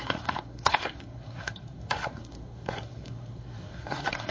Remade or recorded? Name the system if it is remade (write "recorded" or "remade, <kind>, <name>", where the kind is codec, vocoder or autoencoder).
remade, codec, SNAC